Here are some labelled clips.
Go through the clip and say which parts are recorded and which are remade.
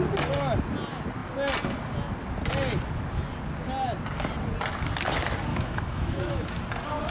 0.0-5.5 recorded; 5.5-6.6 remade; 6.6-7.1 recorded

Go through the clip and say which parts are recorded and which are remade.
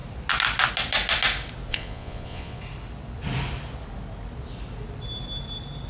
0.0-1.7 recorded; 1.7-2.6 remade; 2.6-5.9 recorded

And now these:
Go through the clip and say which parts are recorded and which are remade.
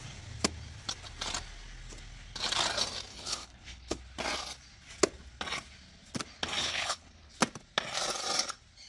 0.0-3.1 recorded; 3.1-4.0 remade; 4.0-6.6 recorded; 6.6-7.3 remade; 7.3-8.9 recorded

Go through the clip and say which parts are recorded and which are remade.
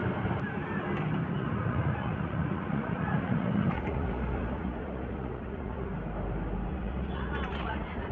0.0-1.3 recorded; 1.3-5.9 remade; 5.9-6.7 recorded; 6.7-8.1 remade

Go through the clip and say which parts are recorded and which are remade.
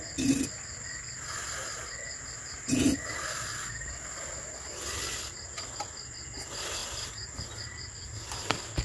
0.0-8.8 recorded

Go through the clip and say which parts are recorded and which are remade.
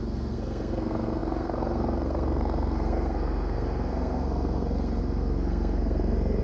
0.0-6.4 remade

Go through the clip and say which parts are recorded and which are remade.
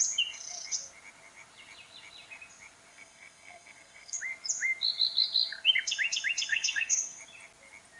0.0-2.9 recorded; 2.9-4.2 remade; 4.2-6.5 recorded; 6.5-7.2 remade; 7.2-8.0 recorded